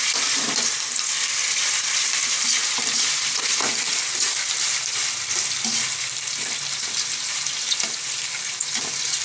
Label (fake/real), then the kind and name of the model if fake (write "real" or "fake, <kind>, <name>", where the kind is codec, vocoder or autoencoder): fake, vocoder, BigVGAN v2